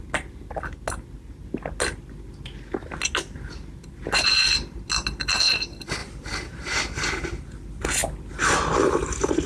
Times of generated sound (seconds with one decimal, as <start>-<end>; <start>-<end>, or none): 6.0-6.8